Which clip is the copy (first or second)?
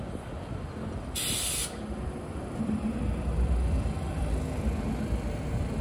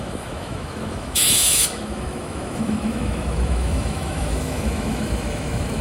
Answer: second